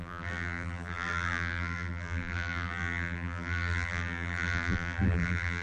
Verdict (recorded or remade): remade